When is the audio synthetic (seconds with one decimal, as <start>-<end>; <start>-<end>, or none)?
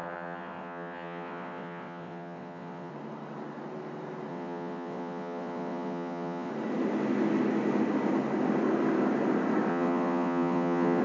0.0-2.9; 4.3-6.5; 9.7-11.0